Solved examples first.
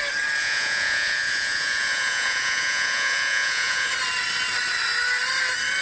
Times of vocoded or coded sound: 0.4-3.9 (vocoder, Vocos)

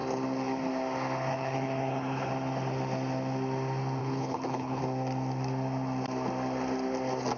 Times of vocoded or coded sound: 1.3-2.3 (codec, HILCodec); 4.0-4.8